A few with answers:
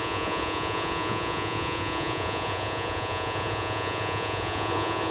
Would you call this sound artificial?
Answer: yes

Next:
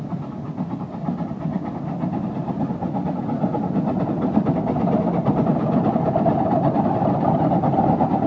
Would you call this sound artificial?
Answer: no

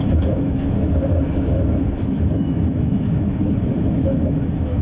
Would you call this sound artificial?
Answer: yes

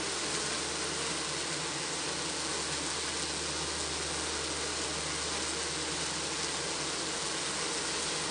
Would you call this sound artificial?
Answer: no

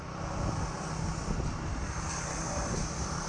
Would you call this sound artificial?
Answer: no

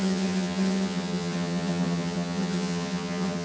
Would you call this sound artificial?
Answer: yes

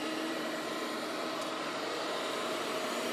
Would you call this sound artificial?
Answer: yes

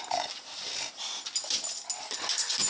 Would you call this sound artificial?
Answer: no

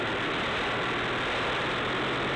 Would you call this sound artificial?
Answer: no